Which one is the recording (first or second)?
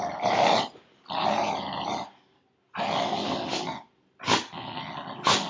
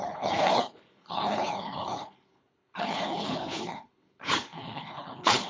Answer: first